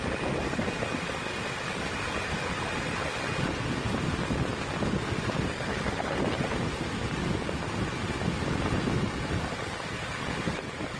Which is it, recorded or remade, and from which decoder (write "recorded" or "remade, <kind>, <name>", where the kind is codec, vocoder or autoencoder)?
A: recorded